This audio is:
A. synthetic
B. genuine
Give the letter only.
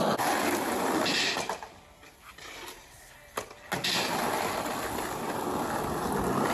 B